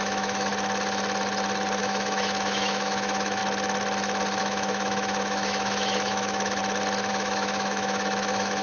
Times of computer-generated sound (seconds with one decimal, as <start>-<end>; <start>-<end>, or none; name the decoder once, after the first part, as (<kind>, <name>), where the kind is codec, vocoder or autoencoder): 0.0-0.5 (autoencoder, DAC-VAE); 1.8-3.4; 4.4-6.6; 7.1-8.6